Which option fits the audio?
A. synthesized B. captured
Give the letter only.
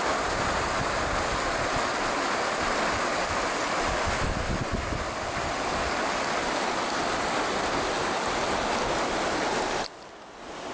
B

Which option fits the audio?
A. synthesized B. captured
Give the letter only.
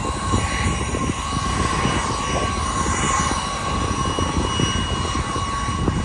B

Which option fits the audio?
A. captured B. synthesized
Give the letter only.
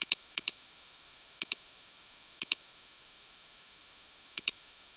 B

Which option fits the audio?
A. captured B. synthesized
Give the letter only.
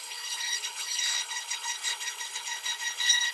B